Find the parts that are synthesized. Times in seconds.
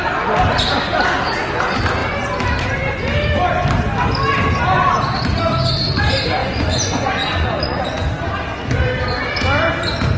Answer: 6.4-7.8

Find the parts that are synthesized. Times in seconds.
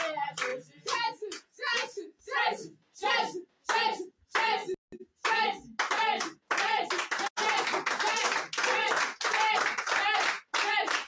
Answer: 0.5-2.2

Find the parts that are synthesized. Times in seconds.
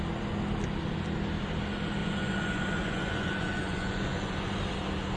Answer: 2.0-4.5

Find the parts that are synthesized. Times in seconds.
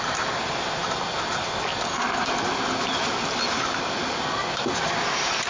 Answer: none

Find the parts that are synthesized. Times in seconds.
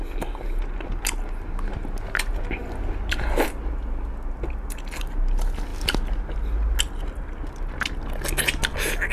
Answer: none